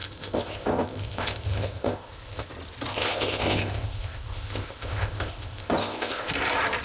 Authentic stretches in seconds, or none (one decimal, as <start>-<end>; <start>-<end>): 2.5-2.9; 6.3-6.8

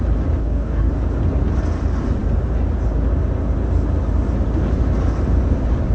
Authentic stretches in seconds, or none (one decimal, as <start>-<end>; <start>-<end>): 0.0-0.4; 0.9-5.9

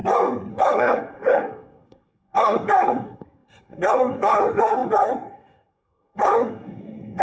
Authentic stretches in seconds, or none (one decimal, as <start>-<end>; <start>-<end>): 0.0-0.5

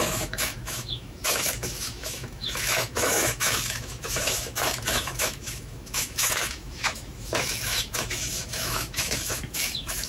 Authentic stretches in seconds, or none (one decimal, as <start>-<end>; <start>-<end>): none

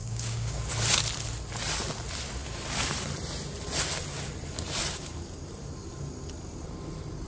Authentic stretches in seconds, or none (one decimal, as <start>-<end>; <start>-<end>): 0.6-7.3

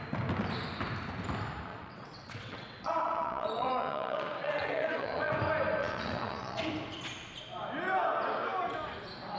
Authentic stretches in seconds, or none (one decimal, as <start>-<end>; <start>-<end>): 0.0-1.7; 5.3-5.8; 6.7-9.4

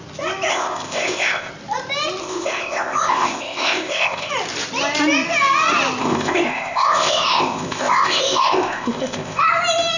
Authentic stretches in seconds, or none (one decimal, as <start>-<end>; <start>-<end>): 0.0-0.5; 1.5-2.2; 4.3-6.0; 9.4-10.0

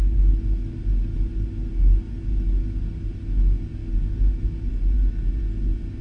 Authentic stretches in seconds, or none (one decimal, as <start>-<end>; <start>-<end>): 0.0-6.0